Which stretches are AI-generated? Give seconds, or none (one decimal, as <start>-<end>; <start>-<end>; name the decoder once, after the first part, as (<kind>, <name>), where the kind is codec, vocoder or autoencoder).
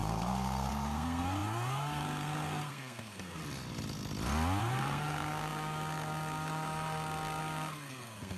0.0-3.4 (codec, SNAC); 4.6-8.4